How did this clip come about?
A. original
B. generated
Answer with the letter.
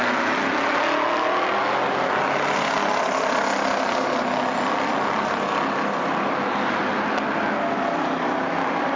A